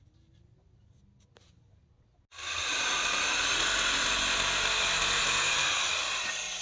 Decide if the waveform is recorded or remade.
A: recorded